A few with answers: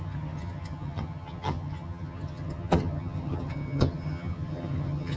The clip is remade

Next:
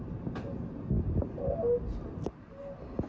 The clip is recorded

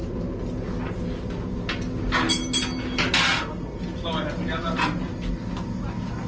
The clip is recorded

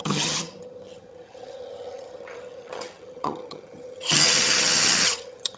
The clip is remade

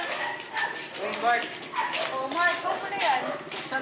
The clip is recorded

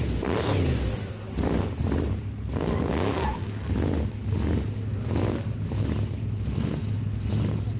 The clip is recorded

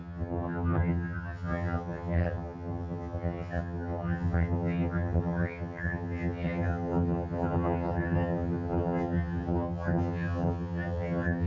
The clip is remade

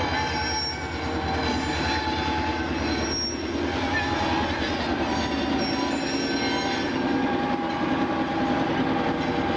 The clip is recorded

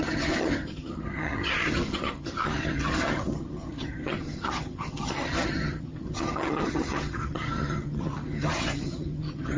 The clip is remade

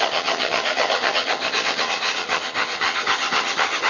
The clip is remade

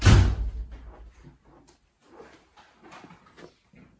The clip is recorded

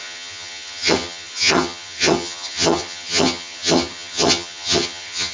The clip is remade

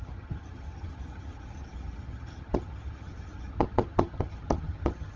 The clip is remade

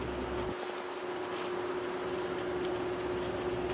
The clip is recorded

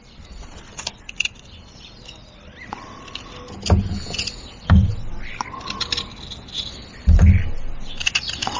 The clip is recorded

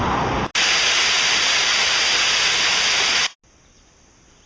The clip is recorded